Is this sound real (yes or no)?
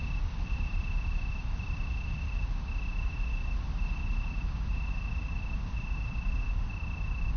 yes